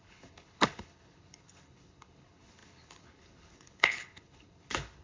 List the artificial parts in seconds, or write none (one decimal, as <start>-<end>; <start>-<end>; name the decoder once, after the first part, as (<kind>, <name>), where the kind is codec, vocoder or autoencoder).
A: 0.0-5.0 (codec, HILCodec)